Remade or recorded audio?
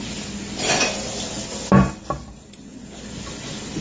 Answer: recorded